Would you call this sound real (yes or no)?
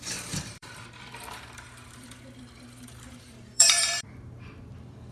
no